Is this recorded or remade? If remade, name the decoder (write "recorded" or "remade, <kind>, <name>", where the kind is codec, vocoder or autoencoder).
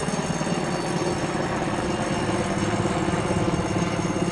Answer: recorded